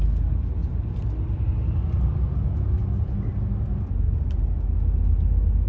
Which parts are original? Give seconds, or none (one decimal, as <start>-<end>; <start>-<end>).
0.0-5.7

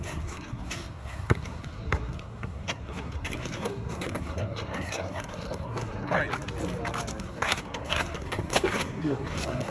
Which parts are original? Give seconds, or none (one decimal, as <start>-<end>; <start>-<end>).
6.2-7.2